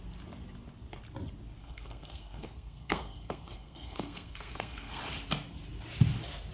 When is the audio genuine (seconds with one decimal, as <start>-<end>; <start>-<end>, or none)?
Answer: 0.0-1.6; 5.0-6.5